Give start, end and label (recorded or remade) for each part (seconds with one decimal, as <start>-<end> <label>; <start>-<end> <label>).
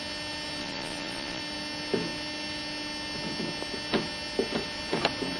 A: 0.0-0.6 recorded; 0.6-1.4 remade; 1.4-5.4 recorded